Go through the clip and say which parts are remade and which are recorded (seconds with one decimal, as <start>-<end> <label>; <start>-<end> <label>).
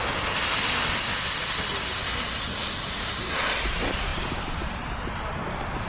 0.0-5.9 recorded